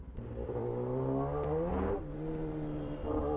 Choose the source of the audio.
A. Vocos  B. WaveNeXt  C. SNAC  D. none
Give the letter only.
D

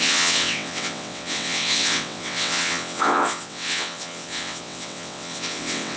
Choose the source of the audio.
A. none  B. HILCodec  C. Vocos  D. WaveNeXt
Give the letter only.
D